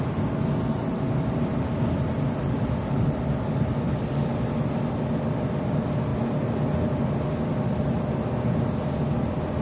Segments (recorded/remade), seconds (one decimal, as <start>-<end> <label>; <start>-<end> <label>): 0.0-9.6 recorded